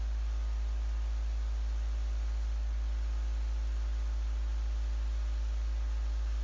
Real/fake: real